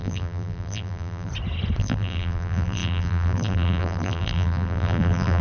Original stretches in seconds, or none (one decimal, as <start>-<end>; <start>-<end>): 1.3-1.8